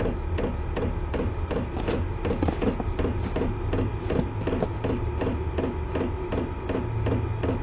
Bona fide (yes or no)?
yes